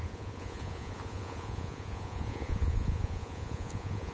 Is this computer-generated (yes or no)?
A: yes